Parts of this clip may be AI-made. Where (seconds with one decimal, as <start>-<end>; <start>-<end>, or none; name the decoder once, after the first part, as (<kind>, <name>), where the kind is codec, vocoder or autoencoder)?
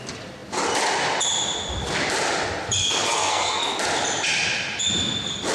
2.8-3.7 (codec, SNAC)